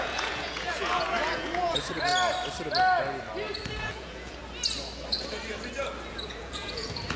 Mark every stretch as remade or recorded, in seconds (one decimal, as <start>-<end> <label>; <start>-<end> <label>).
0.0-2.1 remade; 2.1-3.8 recorded; 3.8-4.4 remade; 4.4-6.1 recorded; 6.1-7.2 remade